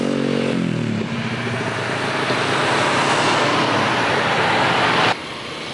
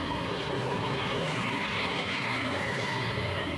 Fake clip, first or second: second